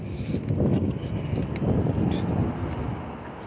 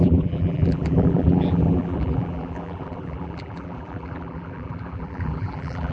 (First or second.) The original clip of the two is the first